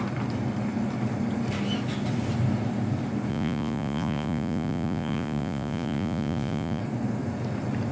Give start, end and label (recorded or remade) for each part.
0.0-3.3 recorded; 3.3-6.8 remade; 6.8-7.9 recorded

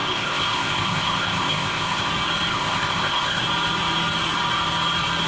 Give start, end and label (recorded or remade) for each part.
0.0-2.1 remade; 2.1-2.5 recorded; 2.5-3.4 remade; 3.4-5.3 recorded

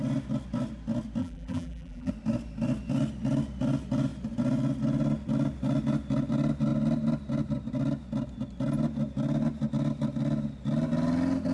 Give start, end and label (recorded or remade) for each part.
0.0-1.2 recorded; 1.2-2.1 remade; 2.1-11.5 recorded

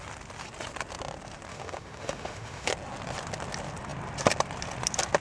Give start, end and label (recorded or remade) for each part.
0.0-1.5 recorded; 1.5-2.7 remade; 2.7-5.2 recorded

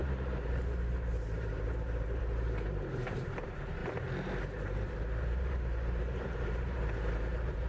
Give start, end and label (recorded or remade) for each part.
0.0-7.7 remade

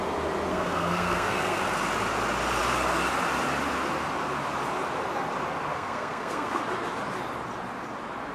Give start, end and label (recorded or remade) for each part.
0.0-0.5 recorded; 0.5-1.6 remade; 1.6-5.7 recorded; 5.7-6.6 remade; 6.6-8.3 recorded

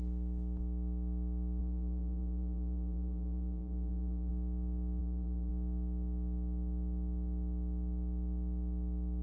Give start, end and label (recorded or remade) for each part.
0.0-1.6 recorded; 1.6-4.3 remade; 4.3-5.0 recorded; 5.0-5.5 remade; 5.5-9.2 recorded

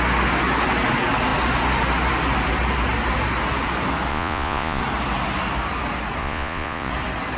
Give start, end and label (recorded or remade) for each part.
0.0-4.1 recorded; 4.1-4.8 remade; 4.8-6.2 recorded; 6.2-6.9 remade; 6.9-7.4 recorded